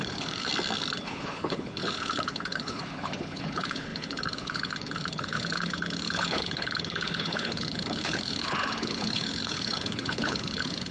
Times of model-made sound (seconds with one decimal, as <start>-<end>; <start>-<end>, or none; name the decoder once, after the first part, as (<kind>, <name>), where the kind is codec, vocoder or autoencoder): 0.0-0.5 (codec, HILCodec); 1.0-10.9